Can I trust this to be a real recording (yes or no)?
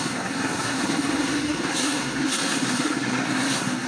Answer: no